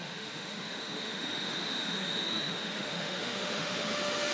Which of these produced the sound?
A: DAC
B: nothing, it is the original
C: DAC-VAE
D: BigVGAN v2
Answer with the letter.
C